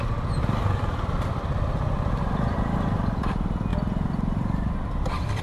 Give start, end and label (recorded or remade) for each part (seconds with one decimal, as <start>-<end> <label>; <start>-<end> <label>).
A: 0.0-5.4 remade